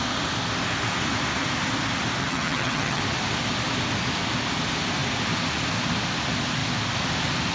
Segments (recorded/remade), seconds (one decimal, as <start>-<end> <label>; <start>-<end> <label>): 0.0-2.2 recorded; 2.2-3.0 remade; 3.0-7.5 recorded